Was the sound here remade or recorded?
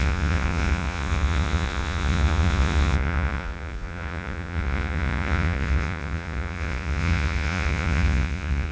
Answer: remade